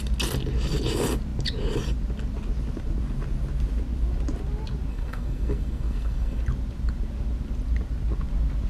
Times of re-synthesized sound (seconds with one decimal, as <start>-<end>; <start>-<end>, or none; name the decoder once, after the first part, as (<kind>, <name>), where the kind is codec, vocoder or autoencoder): 4.9-6.4 (codec, SNAC)